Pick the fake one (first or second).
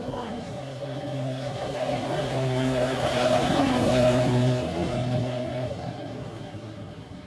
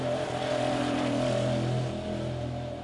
first